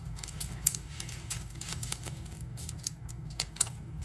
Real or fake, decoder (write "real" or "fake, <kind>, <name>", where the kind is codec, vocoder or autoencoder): fake, codec, DAC